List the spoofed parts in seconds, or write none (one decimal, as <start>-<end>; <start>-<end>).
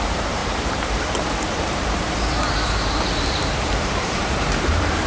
0.0-5.1